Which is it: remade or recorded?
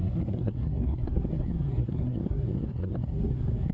remade